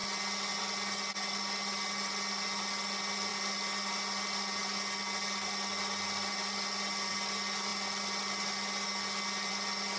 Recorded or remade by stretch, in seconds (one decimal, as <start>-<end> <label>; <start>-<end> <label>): 0.0-10.0 recorded